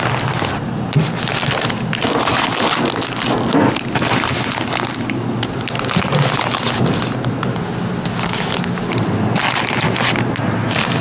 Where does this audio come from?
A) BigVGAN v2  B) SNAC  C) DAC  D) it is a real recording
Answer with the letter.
D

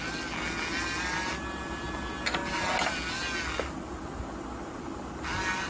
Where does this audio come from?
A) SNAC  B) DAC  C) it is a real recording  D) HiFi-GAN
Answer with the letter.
C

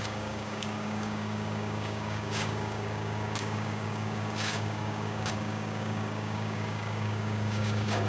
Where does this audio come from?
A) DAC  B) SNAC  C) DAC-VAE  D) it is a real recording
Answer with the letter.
A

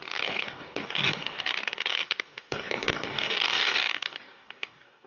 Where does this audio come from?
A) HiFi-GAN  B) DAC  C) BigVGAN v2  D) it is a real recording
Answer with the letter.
B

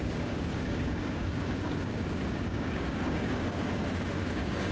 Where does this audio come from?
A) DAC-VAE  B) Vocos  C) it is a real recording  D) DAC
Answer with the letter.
D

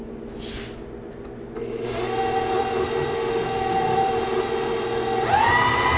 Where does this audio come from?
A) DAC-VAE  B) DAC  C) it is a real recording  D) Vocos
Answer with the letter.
C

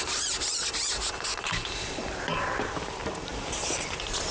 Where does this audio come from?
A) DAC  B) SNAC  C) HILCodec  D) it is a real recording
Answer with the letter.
D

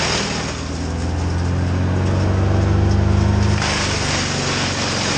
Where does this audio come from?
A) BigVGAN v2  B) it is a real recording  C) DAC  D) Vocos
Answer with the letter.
B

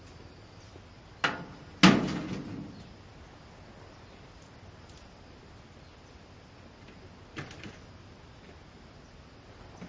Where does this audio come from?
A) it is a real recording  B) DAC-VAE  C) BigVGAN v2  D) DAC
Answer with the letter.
A